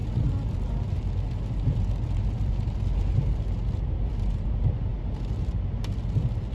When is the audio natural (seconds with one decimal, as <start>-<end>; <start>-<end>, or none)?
0.0-6.5